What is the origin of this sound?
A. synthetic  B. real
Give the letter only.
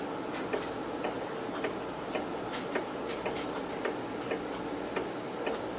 B